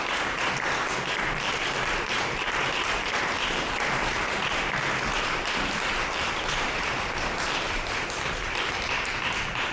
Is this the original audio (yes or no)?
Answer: no